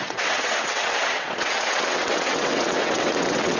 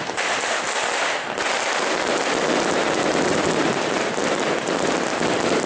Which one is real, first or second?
second